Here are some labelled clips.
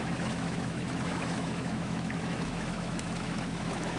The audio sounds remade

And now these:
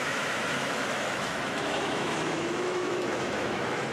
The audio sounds remade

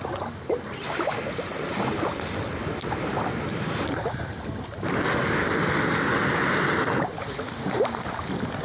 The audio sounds recorded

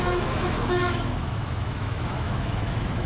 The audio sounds remade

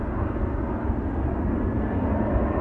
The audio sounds recorded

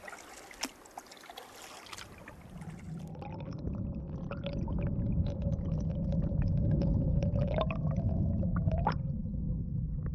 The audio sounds recorded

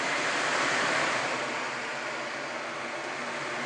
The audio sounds recorded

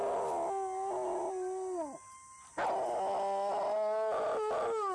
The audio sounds recorded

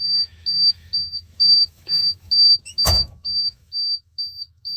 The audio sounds remade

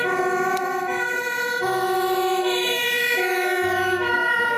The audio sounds remade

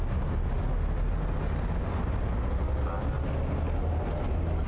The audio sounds recorded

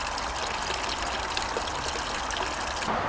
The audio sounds recorded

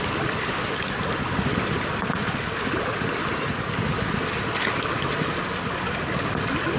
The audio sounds recorded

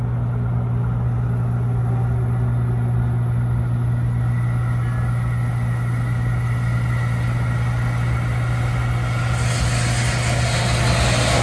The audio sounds recorded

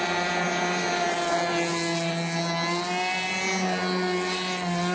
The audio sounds recorded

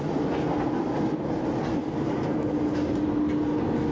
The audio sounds recorded